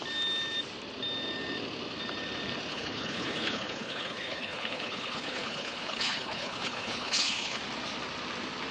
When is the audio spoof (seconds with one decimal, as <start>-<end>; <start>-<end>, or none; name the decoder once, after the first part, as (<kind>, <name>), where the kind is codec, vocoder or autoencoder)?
2.7-7.6 (codec, HILCodec)